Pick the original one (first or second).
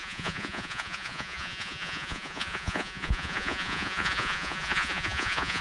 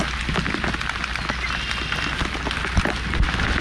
second